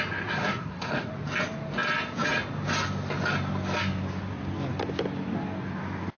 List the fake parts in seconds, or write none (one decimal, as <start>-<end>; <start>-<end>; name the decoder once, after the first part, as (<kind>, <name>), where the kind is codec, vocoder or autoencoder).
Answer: 0.4-1.1 (codec, SNAC)